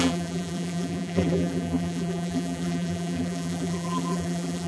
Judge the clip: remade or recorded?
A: remade